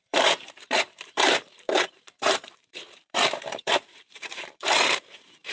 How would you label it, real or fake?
fake